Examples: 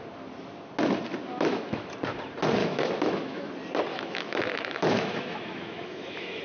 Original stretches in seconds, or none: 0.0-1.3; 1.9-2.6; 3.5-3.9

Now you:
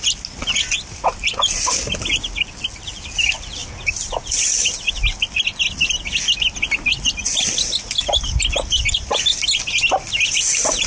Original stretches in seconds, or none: 0.0-10.9

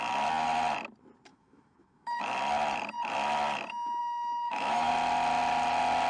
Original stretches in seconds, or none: 0.0-1.3; 2.2-4.0; 4.9-6.1

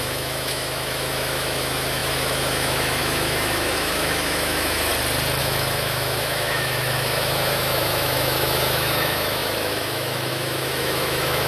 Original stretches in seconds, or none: 4.9-5.4

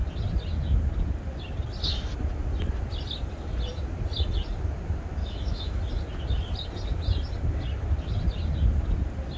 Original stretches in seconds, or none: 0.0-5.2; 5.8-9.4